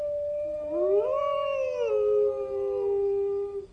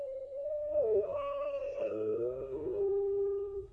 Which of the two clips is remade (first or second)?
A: second